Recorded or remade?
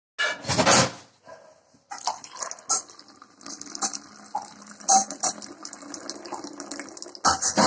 recorded